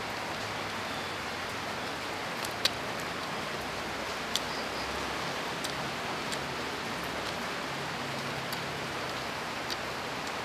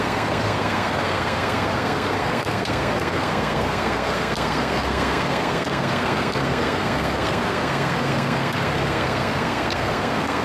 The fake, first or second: second